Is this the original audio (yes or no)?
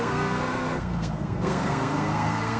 no